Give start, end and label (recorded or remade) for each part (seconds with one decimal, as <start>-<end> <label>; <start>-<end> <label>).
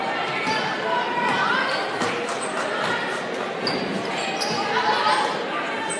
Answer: 0.0-6.0 recorded